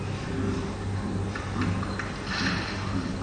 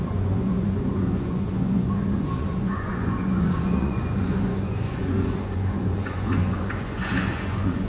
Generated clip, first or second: second